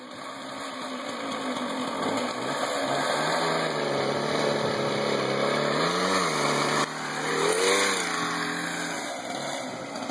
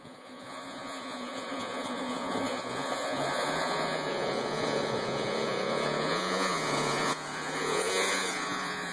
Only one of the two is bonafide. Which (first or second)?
first